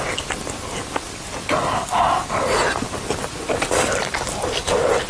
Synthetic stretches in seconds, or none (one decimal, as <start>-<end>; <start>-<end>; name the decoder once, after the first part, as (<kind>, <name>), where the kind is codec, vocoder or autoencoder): none